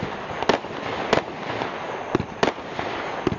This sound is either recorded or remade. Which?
recorded